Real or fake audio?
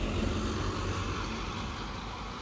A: real